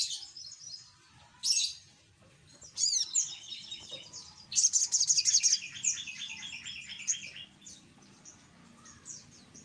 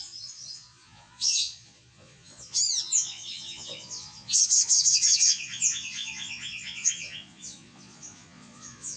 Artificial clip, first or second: second